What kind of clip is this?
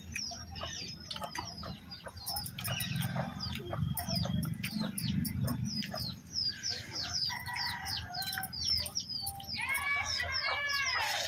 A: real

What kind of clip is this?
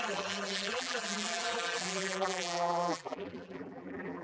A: fake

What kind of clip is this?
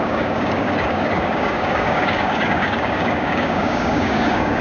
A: fake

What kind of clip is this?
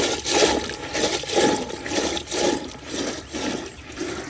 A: real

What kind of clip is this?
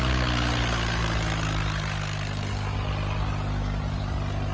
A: real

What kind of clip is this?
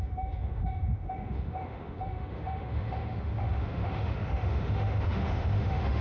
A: fake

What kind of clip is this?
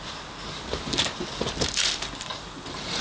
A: real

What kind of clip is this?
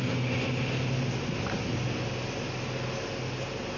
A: real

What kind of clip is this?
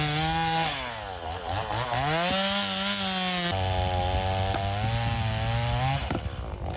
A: real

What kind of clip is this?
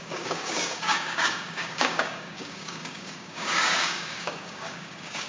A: fake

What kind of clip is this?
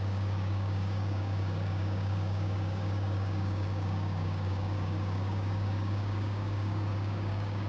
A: fake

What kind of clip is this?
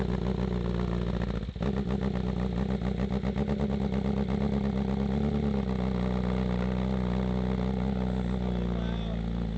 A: real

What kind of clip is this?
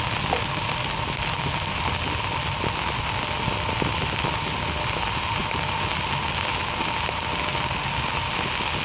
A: real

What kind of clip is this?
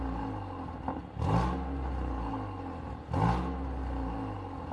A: real